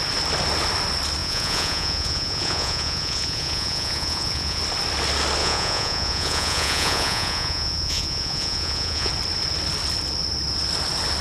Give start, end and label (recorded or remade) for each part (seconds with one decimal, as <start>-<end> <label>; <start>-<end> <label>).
0.0-1.2 recorded; 1.2-4.6 remade; 4.6-5.4 recorded; 5.4-9.1 remade; 9.1-11.2 recorded